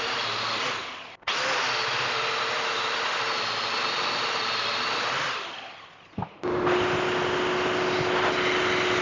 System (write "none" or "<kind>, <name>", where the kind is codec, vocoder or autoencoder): none